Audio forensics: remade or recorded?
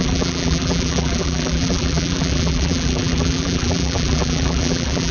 remade